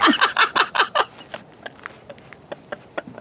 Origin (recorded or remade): recorded